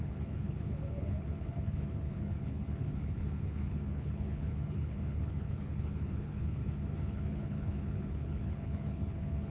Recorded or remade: remade